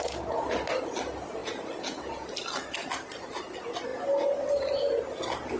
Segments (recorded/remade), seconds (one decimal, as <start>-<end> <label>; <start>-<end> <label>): 0.0-5.6 recorded